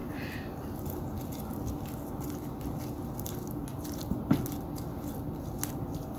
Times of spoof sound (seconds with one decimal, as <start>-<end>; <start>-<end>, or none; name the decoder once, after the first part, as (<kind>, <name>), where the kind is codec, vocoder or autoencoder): none